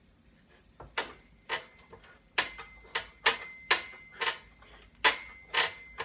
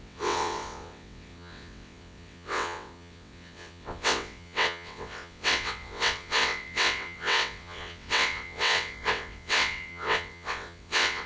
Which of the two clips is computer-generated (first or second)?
second